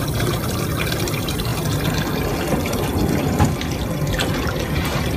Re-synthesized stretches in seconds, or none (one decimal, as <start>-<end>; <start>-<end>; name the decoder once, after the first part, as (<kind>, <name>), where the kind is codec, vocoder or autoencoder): 0.0-1.5 (vocoder, BigVGAN v2); 4.6-5.2